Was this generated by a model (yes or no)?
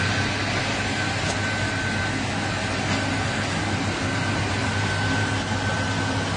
no